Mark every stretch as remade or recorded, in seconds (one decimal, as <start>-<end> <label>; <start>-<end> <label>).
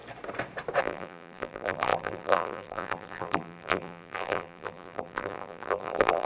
0.0-0.8 recorded; 0.8-6.2 remade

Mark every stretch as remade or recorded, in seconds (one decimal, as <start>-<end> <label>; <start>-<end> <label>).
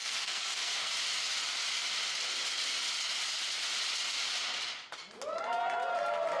0.0-0.9 remade; 0.9-6.4 recorded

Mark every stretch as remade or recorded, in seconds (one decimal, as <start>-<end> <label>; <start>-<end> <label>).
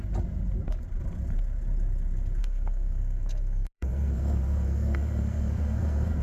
0.0-2.4 recorded; 2.4-6.2 remade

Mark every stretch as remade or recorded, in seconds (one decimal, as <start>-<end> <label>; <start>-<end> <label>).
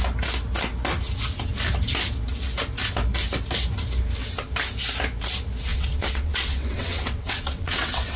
0.0-5.7 recorded; 5.7-8.2 remade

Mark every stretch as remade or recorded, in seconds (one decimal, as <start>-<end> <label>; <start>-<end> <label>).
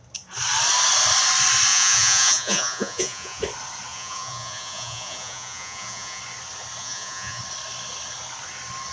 0.0-1.7 recorded; 1.7-3.4 remade; 3.4-3.9 recorded; 3.9-6.2 remade; 6.2-6.8 recorded; 6.8-7.4 remade; 7.4-8.9 recorded